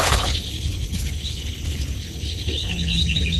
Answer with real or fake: fake